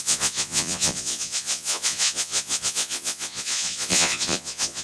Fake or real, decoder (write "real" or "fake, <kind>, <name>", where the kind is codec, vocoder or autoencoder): fake, vocoder, Vocos